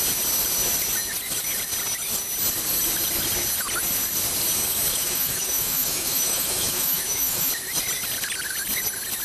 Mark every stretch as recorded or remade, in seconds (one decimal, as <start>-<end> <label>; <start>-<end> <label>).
0.0-4.9 recorded; 4.9-7.5 remade; 7.5-9.2 recorded